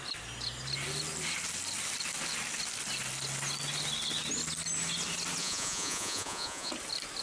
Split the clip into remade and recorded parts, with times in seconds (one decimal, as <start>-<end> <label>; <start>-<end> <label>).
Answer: 0.0-5.4 recorded; 5.4-6.7 remade; 6.7-7.2 recorded